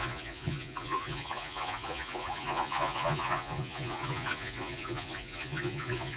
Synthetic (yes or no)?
yes